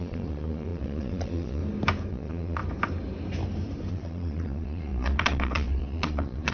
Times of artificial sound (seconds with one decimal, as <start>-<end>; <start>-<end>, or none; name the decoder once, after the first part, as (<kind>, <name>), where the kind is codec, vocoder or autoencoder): 0.0-1.6 (vocoder, Vocos); 2.1-2.6; 3.9-6.5